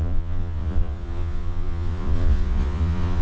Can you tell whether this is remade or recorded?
remade